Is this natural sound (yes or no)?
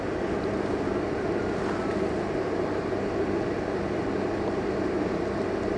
yes